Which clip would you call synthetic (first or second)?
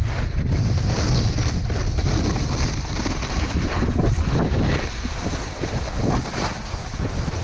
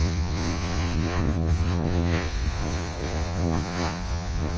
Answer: second